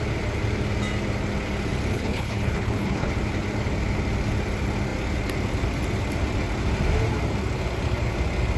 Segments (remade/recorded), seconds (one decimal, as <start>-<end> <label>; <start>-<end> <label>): 0.0-1.9 recorded; 1.9-3.1 remade; 3.1-8.6 recorded